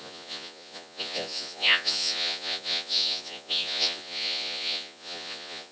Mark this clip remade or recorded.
remade